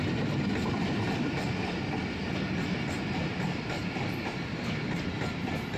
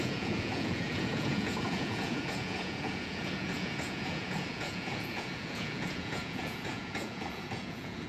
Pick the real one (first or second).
first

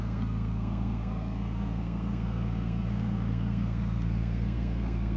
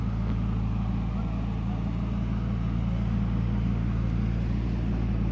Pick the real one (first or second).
second